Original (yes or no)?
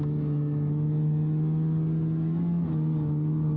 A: yes